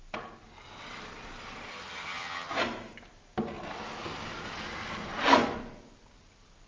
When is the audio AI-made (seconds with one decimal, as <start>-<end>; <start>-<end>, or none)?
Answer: 1.7-2.5